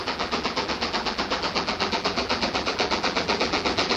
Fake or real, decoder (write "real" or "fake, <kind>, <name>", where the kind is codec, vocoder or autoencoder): fake, vocoder, BigVGAN v2